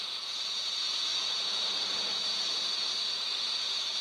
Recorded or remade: remade